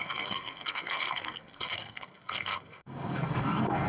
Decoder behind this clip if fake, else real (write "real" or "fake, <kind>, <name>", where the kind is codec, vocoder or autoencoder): fake, codec, SNAC